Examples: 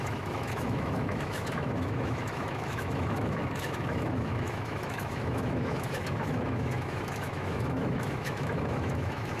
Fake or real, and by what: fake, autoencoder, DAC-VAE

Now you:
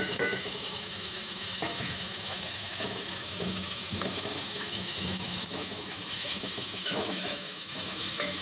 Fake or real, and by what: fake, autoencoder, DAC-VAE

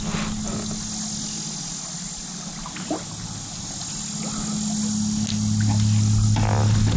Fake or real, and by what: real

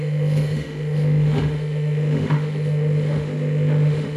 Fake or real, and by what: fake, autoencoder, DAC-VAE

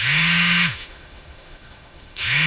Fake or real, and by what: fake, autoencoder, DAC-VAE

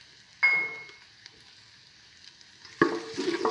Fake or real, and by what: real